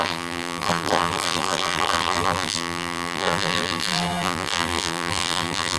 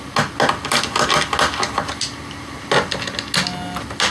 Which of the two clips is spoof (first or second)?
first